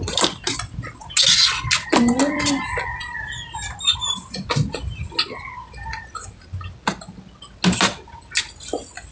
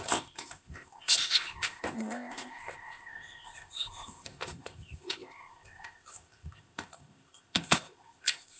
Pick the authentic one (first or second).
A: first